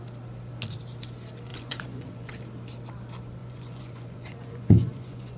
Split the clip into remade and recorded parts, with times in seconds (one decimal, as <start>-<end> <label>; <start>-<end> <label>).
0.0-1.5 recorded; 1.5-2.3 remade; 2.3-3.4 recorded; 3.4-5.4 remade